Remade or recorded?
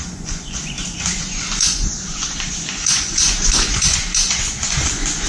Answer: remade